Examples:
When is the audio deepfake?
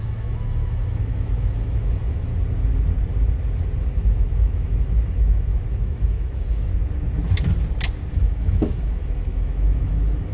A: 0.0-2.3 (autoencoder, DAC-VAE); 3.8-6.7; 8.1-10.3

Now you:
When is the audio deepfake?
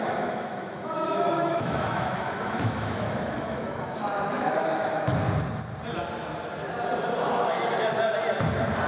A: 0.0-5.1 (autoencoder, DAC-VAE)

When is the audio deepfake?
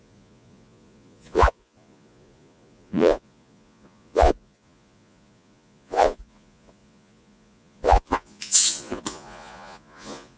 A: 0.0-10.4 (vocoder, Vocos)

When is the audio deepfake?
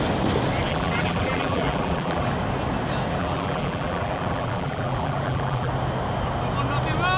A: 0.7-2.3 (vocoder, BigVGAN v2); 3.2-5.7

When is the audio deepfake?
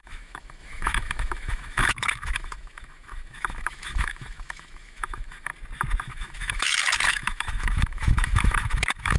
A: 0.0-5.5 (autoencoder, DAC-VAE); 6.0-9.2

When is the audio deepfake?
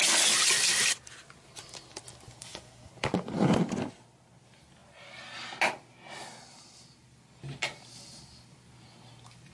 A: 2.4-2.9 (codec, SNAC)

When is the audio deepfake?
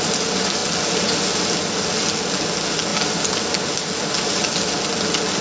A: none